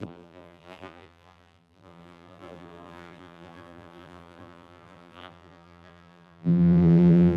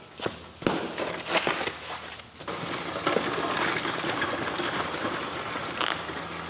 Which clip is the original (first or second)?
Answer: second